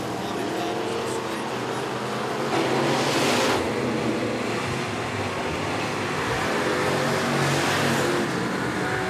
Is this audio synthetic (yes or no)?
no